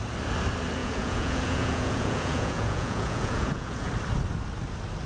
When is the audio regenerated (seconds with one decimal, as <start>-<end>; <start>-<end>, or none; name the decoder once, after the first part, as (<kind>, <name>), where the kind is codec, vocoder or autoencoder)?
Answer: 0.8-3.9 (vocoder, Vocos)